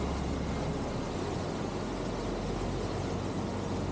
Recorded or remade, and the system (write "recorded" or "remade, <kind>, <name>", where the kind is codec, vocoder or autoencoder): recorded